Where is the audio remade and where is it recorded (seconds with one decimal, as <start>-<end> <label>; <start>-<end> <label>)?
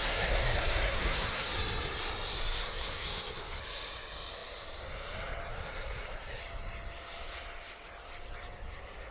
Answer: 0.0-1.5 remade; 1.5-2.6 recorded; 2.6-3.6 remade; 3.6-5.5 recorded; 5.5-6.4 remade; 6.4-9.1 recorded